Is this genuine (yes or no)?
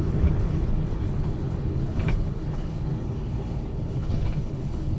no